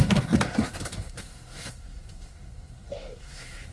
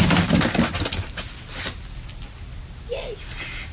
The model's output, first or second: first